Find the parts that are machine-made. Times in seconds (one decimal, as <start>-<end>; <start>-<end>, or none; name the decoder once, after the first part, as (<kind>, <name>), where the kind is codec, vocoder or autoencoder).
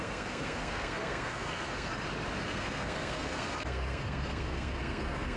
0.0-1.9 (codec, SNAC); 2.4-5.4